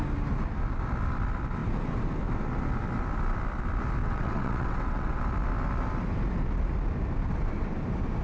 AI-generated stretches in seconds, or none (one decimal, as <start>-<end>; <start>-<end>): 4.0-5.2

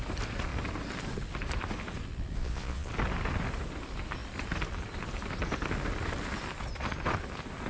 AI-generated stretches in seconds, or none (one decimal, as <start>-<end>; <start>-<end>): 2.4-2.9